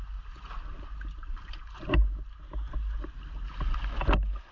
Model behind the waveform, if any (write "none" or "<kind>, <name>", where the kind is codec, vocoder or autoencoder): none